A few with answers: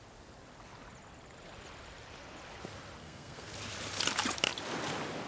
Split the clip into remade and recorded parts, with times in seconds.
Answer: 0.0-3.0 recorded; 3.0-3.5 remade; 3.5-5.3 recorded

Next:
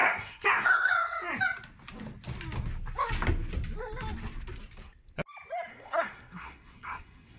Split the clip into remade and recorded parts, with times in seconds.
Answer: 0.0-0.9 remade; 0.9-5.7 recorded; 5.7-7.4 remade